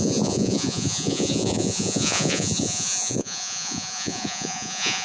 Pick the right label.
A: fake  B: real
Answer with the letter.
A